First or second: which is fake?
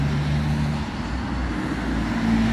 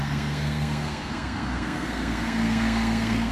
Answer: second